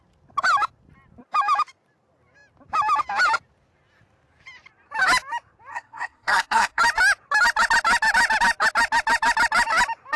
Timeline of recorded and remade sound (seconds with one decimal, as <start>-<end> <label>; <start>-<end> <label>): 0.0-5.7 recorded; 5.7-6.8 remade; 6.8-10.2 recorded